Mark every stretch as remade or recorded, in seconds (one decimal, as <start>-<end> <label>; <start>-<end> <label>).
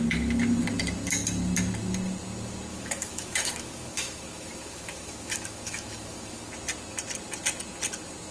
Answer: 0.0-2.7 recorded; 2.7-6.5 remade; 6.5-8.3 recorded